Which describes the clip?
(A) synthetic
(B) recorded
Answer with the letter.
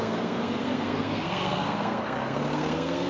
A